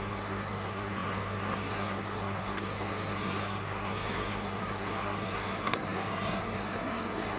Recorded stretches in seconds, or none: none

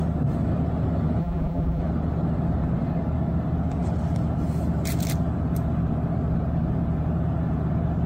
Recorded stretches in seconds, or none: 0.0-1.2; 1.8-8.1

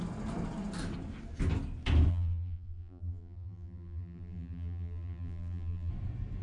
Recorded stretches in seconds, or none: 0.0-2.1; 5.9-6.4

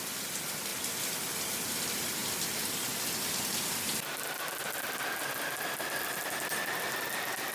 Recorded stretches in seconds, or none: 0.0-7.5

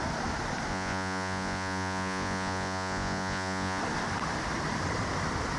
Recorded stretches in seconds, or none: 0.0-0.7; 3.8-5.6

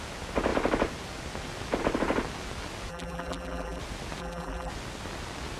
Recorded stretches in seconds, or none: 0.0-2.9; 3.8-4.2; 4.7-5.6

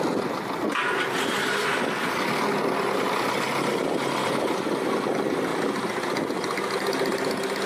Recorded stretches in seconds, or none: 0.0-7.7

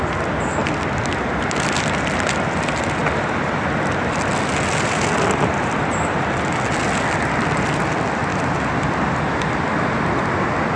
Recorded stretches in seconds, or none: 0.0-10.8